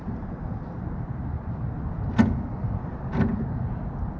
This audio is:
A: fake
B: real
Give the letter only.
B